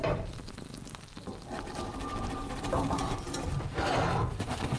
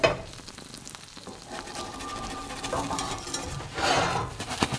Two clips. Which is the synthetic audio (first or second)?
first